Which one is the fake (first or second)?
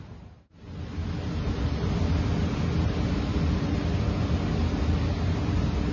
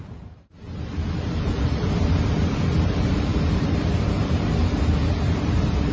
second